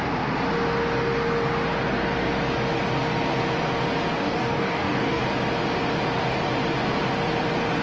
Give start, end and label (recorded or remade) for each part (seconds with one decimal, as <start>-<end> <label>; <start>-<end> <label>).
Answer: 0.0-4.1 recorded; 4.1-5.2 remade; 5.2-7.8 recorded